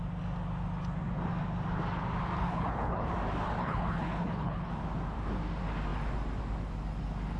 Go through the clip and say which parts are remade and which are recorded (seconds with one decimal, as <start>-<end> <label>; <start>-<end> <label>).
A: 0.0-2.4 recorded; 2.4-3.1 remade; 3.1-3.6 recorded; 3.6-4.7 remade; 4.7-7.4 recorded